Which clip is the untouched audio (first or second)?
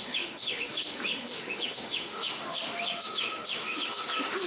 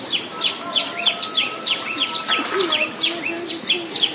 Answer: second